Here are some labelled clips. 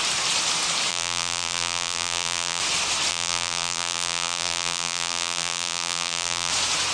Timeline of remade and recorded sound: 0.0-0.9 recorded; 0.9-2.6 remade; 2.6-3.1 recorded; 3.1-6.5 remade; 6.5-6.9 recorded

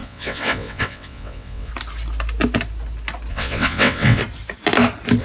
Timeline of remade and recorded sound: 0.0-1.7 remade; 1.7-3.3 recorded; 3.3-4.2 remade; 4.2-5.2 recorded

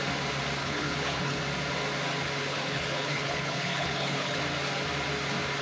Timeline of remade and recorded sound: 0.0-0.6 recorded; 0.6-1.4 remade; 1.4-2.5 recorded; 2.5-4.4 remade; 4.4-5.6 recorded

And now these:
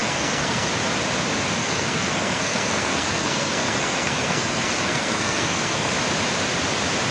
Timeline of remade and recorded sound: 0.0-0.7 remade; 0.7-1.6 recorded; 1.6-5.9 remade; 5.9-7.1 recorded

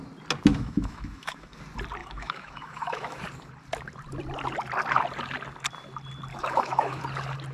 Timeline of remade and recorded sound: 0.0-0.5 recorded; 0.5-1.6 remade; 1.6-2.0 recorded; 2.0-3.2 remade; 3.2-6.3 recorded; 6.3-7.0 remade; 7.0-7.5 recorded

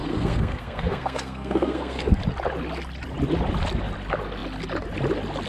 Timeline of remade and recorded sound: 0.0-2.2 remade; 2.2-5.5 recorded